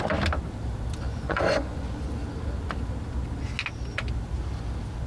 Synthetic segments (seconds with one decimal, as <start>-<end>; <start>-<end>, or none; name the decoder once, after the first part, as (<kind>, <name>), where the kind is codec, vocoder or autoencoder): 1.1-2.1 (vocoder, Vocos)